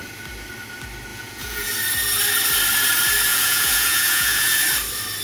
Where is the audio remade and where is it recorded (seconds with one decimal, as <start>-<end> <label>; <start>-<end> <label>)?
0.0-1.1 recorded; 1.1-1.7 remade; 1.7-3.3 recorded; 3.3-4.6 remade; 4.6-5.2 recorded